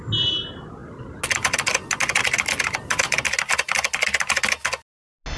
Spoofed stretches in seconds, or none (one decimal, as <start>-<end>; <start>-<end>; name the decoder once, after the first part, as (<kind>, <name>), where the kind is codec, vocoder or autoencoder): none

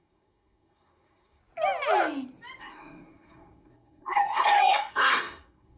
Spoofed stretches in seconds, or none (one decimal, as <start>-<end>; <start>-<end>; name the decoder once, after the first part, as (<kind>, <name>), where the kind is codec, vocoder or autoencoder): 0.0-1.4 (codec, SNAC); 2.6-5.8

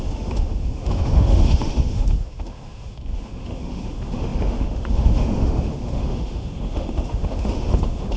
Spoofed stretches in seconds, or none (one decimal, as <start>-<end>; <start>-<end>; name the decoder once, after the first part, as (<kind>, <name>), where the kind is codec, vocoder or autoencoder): 0.0-8.2 (autoencoder, DAC-VAE)

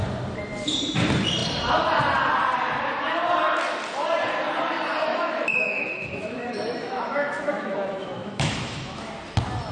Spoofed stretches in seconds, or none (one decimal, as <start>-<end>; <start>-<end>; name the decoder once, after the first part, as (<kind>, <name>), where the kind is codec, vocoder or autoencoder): 5.1-9.1 (autoencoder, DAC-VAE)